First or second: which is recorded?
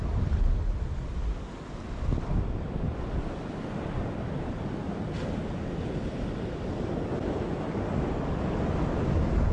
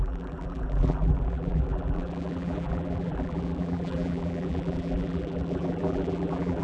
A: first